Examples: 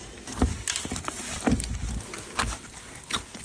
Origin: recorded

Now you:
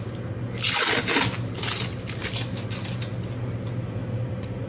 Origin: recorded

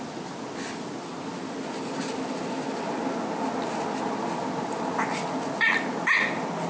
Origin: recorded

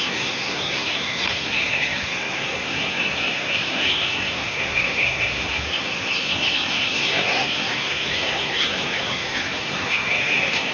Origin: remade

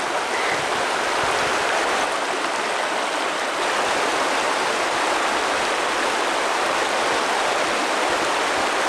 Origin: recorded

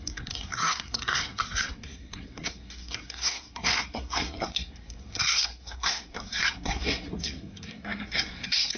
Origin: remade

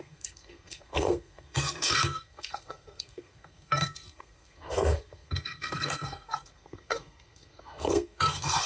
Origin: remade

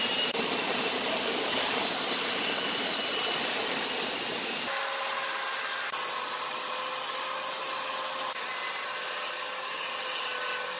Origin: recorded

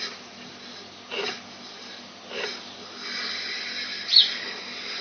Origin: recorded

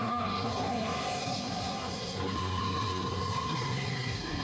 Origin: remade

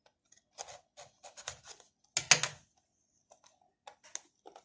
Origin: recorded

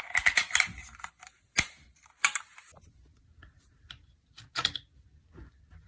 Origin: recorded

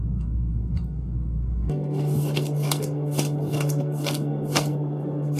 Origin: remade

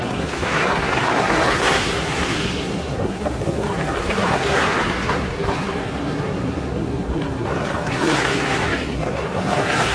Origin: remade